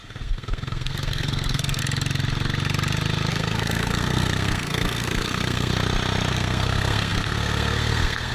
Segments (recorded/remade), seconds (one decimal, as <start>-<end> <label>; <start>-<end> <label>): 0.0-1.8 remade; 1.8-3.3 recorded; 3.3-5.7 remade; 5.7-6.3 recorded; 6.3-8.3 remade